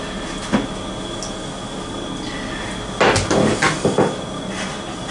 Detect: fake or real real